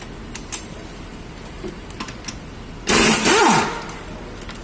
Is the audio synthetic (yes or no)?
no